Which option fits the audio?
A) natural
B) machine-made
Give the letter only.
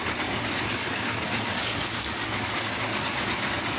B